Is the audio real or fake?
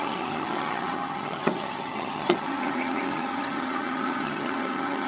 fake